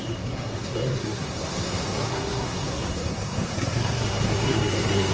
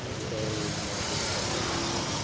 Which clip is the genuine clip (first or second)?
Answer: second